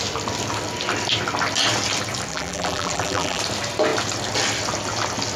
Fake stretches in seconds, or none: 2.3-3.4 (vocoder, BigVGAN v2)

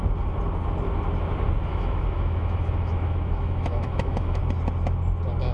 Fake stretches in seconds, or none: 1.7-4.4 (autoencoder, DAC-VAE)

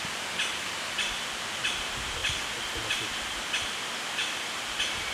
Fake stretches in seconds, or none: none

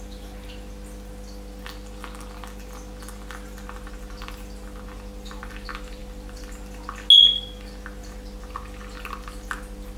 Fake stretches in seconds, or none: none

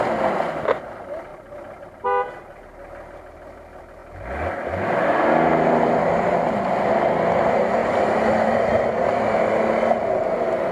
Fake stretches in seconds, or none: 7.8-9.3 (vocoder, BigVGAN v2)

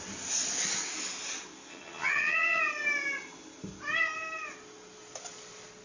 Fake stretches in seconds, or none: 1.7-2.6 (vocoder, HiFi-GAN)

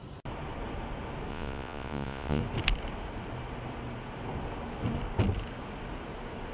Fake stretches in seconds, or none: 1.3-2.4 (vocoder, Vocos)